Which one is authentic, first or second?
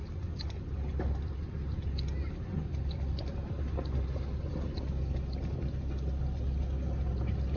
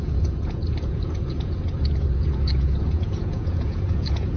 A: first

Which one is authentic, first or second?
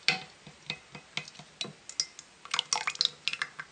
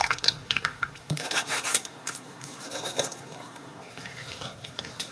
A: first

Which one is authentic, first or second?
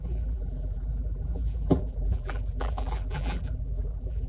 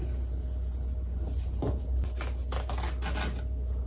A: second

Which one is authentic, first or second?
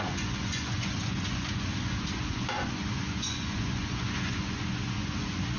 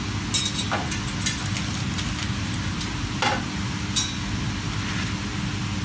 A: second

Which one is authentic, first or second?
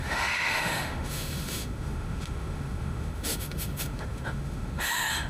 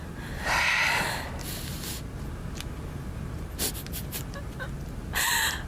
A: second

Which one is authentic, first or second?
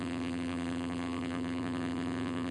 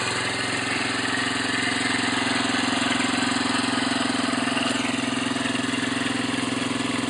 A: second